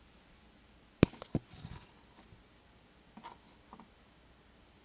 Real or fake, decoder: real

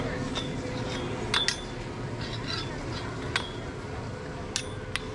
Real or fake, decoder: real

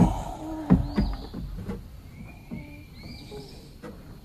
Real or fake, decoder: real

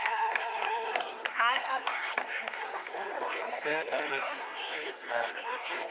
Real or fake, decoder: fake, codec, SNAC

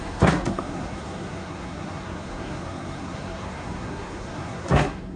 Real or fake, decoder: fake, codec, SNAC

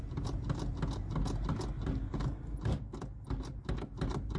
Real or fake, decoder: real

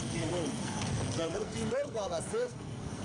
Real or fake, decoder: fake, codec, SNAC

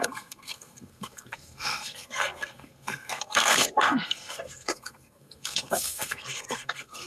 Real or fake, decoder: fake, codec, SNAC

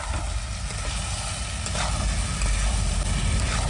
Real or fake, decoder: real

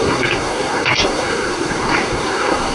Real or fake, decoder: fake, codec, SNAC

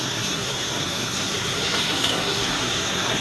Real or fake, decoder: fake, codec, SNAC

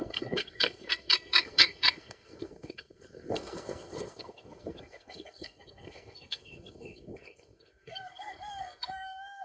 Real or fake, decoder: fake, codec, SNAC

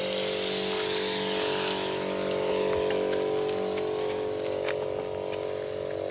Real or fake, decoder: real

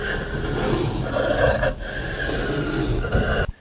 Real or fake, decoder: real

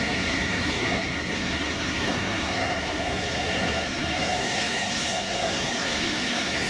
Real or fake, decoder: fake, codec, SNAC